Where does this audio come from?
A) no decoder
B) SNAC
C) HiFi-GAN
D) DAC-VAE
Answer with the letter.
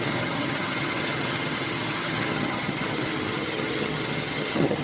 C